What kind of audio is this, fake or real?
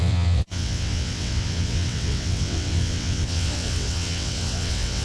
fake